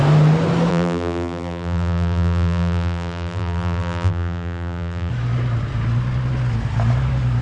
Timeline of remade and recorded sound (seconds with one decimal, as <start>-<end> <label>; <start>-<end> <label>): 0.0-0.7 recorded; 0.7-5.1 remade; 5.1-7.4 recorded